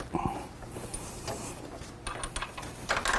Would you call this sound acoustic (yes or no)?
yes